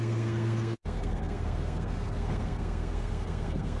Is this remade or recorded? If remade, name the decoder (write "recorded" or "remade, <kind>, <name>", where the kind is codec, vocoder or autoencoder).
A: remade, codec, SNAC